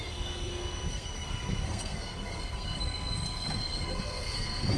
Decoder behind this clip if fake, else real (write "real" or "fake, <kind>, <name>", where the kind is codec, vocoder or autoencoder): fake, codec, SNAC